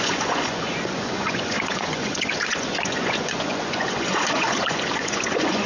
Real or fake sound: fake